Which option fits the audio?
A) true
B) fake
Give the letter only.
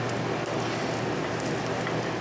A